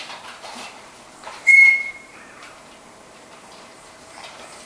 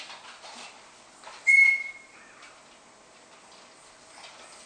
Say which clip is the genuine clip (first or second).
second